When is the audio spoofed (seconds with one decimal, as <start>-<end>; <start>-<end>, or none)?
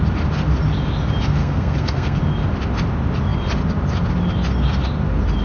1.4-2.2